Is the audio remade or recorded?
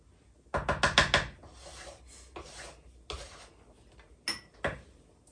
recorded